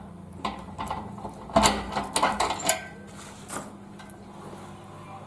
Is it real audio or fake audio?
real